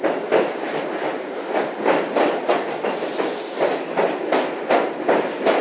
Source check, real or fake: real